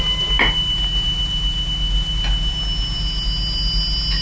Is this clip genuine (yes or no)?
yes